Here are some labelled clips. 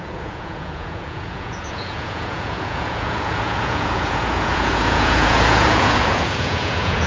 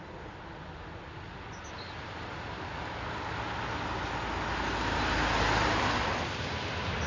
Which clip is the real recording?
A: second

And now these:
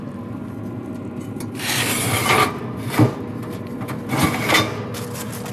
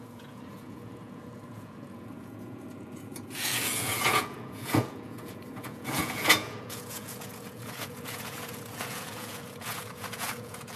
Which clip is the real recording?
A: first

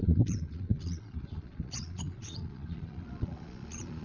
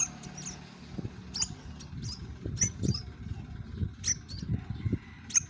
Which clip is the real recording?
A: second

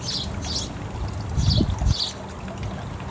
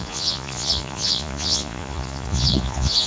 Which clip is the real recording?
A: first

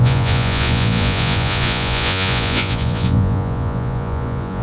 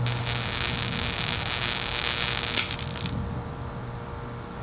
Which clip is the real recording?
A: second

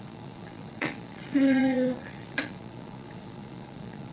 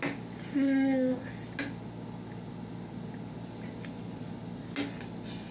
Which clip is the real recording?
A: second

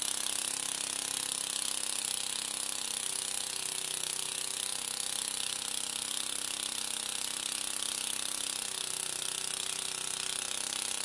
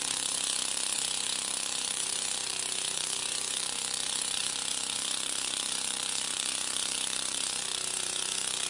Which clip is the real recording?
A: first